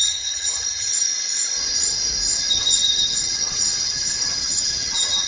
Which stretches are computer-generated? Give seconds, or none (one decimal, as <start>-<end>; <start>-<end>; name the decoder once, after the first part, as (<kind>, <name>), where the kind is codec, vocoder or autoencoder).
0.0-0.9 (vocoder, HiFi-GAN); 2.5-5.3

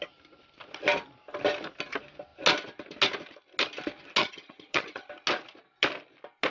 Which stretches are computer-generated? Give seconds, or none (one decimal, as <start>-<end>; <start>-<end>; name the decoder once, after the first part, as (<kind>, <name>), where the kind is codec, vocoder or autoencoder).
4.2-5.1 (vocoder, HiFi-GAN)

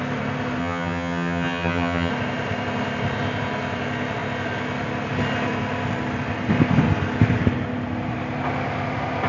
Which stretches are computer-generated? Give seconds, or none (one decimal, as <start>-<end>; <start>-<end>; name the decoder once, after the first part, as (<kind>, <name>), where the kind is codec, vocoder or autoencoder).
0.6-2.1 (vocoder, HiFi-GAN)

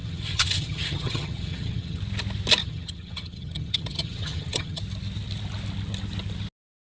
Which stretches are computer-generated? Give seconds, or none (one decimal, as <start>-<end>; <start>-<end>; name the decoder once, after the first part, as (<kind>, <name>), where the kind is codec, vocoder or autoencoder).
0.0-2.0 (vocoder, HiFi-GAN); 2.6-4.8

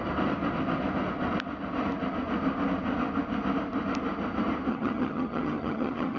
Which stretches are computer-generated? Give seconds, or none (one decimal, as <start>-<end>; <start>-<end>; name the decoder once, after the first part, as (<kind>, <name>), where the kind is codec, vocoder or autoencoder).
4.7-6.2 (vocoder, HiFi-GAN)